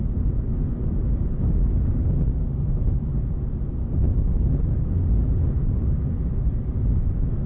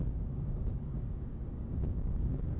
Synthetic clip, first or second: second